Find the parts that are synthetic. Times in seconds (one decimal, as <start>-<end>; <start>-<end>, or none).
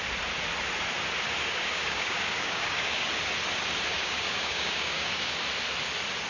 1.4-3.1; 3.9-5.3